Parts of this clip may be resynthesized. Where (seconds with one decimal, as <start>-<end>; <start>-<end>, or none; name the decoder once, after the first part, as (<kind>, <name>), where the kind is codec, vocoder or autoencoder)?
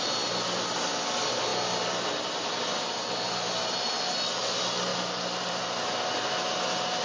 none